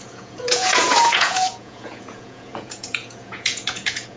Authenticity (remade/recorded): remade